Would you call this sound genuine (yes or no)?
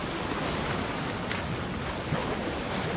yes